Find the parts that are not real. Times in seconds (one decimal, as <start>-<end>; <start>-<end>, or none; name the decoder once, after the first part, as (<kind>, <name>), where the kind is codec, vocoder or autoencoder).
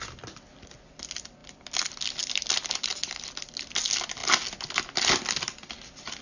none